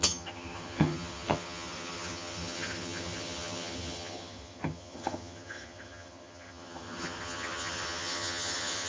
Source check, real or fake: fake